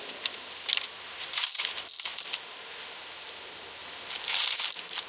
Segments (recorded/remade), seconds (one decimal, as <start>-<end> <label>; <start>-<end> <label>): 0.0-5.1 recorded